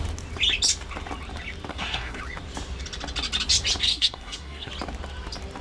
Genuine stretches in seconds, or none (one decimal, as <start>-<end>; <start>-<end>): 0.0-1.7; 2.2-3.9; 4.7-5.6